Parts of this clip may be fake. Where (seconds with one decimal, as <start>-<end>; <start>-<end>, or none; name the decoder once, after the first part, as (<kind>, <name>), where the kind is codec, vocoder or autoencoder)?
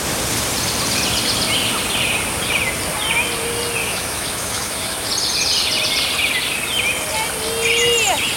3.8-5.1 (autoencoder, DAC-VAE)